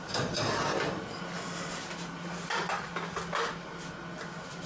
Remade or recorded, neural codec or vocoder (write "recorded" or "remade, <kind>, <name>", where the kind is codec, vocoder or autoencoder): recorded